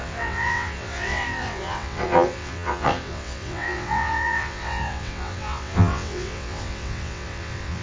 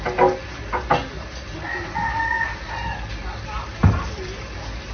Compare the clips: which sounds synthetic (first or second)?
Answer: first